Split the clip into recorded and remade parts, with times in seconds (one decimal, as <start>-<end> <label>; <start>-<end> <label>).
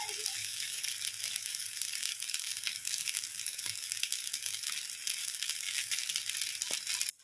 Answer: 0.0-0.4 recorded; 0.4-0.9 remade; 0.9-1.4 recorded; 1.4-4.7 remade; 4.7-5.2 recorded; 5.2-6.1 remade; 6.1-7.2 recorded